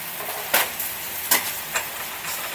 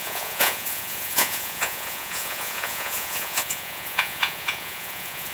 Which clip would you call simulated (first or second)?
second